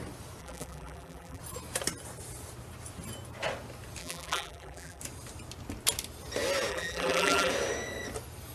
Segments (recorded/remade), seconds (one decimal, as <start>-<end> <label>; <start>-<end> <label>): 0.0-0.4 recorded; 0.4-1.4 remade; 1.4-4.0 recorded; 4.0-5.0 remade; 5.0-6.7 recorded; 6.7-7.5 remade; 7.5-8.5 recorded

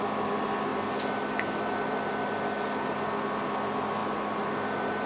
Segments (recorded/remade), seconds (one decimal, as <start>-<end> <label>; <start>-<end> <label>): 0.0-5.1 recorded

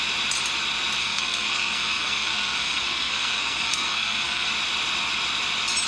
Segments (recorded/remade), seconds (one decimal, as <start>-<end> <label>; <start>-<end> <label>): 0.0-1.0 recorded; 1.0-4.5 remade; 4.5-5.9 recorded

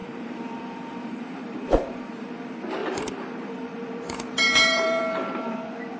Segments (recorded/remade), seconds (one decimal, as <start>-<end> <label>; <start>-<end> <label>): 0.0-2.3 remade; 2.3-2.8 recorded; 2.8-5.0 remade; 5.0-6.0 recorded

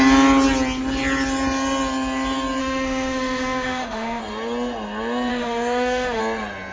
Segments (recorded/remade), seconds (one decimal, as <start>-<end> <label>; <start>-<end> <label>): 0.0-2.6 recorded; 2.6-4.2 remade; 4.2-5.3 recorded; 5.3-6.2 remade; 6.2-6.7 recorded

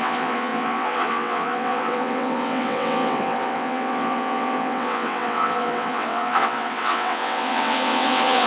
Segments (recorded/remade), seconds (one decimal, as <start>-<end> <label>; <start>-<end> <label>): 0.0-8.5 remade